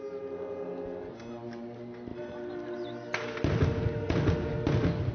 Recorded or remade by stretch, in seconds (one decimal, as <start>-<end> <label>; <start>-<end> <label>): 0.0-5.1 recorded